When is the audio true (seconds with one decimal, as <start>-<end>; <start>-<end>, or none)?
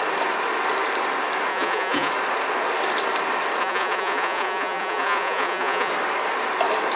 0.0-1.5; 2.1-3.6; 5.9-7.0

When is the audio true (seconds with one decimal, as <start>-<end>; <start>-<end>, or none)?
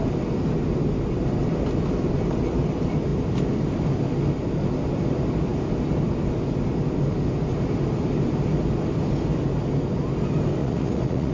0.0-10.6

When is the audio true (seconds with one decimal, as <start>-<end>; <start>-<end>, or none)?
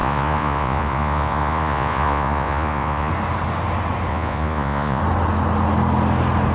3.1-4.1; 5.0-6.5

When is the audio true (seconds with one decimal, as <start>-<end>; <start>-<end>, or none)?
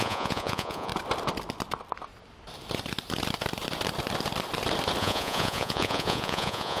0.9-5.0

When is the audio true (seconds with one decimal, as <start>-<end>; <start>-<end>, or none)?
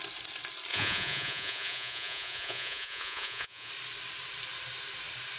0.0-0.7; 3.7-5.4